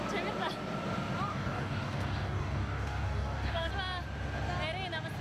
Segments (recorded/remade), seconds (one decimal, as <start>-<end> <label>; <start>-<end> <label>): 0.0-1.3 recorded; 1.3-3.7 remade; 3.7-5.2 recorded